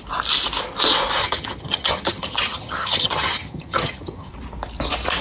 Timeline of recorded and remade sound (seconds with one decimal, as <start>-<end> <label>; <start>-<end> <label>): 0.0-1.2 recorded; 1.2-4.3 remade; 4.3-5.2 recorded